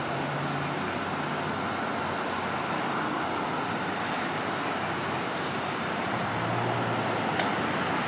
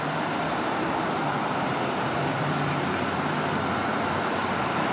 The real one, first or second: first